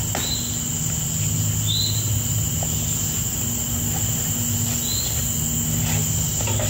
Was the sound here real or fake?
fake